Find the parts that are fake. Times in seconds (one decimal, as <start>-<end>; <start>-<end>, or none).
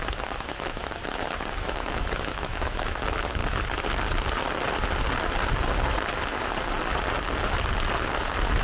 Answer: 0.0-1.0; 1.6-3.4